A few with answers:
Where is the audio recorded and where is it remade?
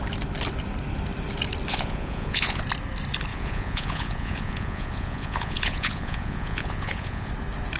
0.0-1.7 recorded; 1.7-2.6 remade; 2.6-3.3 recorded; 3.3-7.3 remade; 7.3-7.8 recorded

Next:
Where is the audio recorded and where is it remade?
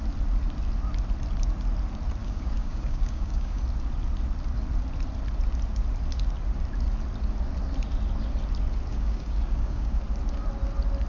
0.0-2.2 recorded; 2.2-3.6 remade; 3.6-8.9 recorded; 8.9-10.0 remade; 10.0-11.1 recorded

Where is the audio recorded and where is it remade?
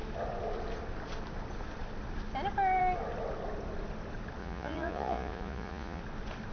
0.0-4.4 recorded; 4.4-6.0 remade; 6.0-6.5 recorded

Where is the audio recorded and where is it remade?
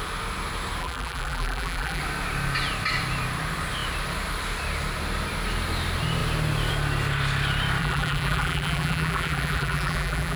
0.0-0.8 recorded; 0.8-2.0 remade; 2.0-7.8 recorded; 7.8-10.4 remade